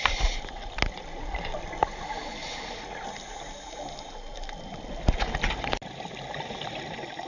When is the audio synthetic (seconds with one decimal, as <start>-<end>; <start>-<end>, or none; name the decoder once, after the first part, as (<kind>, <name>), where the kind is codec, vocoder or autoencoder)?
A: none